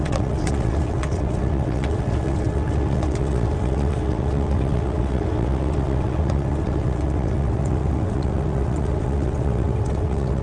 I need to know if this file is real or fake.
fake